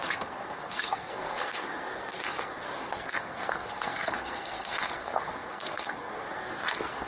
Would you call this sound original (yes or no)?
no